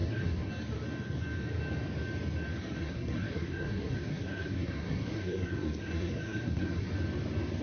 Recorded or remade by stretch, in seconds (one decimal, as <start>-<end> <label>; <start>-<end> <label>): 0.0-0.5 remade; 0.5-2.8 recorded; 2.8-6.9 remade; 6.9-7.6 recorded